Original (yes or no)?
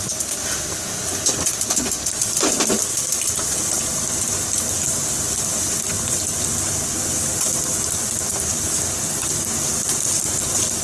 yes